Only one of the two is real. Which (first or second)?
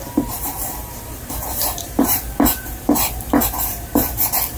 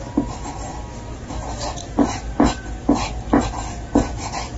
second